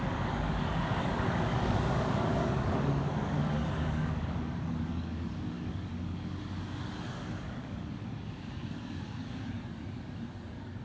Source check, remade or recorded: remade